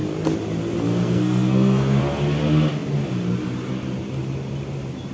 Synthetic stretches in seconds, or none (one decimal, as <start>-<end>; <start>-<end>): 0.9-2.0